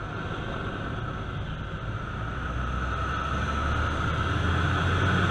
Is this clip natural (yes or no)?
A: yes